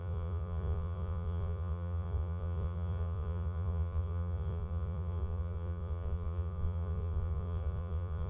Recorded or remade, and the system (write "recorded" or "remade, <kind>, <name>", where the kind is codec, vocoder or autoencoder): remade, vocoder, Vocos